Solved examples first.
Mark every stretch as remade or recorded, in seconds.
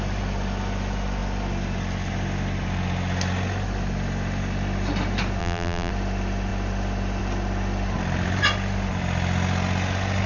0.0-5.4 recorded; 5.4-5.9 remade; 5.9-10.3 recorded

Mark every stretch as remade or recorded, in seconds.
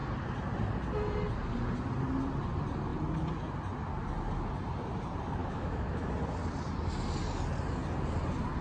0.0-5.4 recorded; 5.4-6.1 remade; 6.1-8.6 recorded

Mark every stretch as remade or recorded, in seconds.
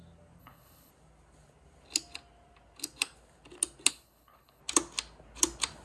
0.0-0.4 recorded; 0.4-0.9 remade; 0.9-3.9 recorded; 3.9-4.6 remade; 4.6-5.8 recorded